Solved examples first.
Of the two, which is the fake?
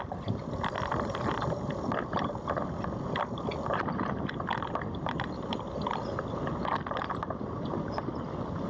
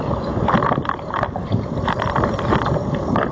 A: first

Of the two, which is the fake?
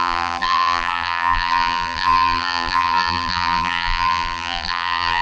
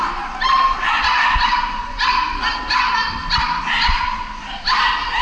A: first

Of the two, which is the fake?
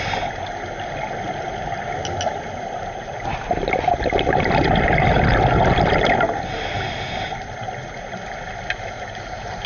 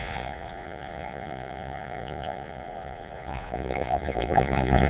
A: second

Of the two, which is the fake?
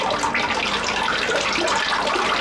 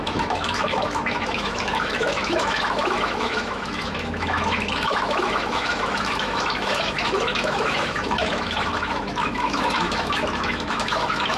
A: second